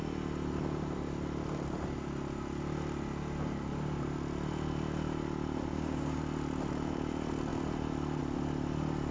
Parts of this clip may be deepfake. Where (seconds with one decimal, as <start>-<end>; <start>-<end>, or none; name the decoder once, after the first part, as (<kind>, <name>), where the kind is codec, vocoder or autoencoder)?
5.7-6.2 (codec, DAC)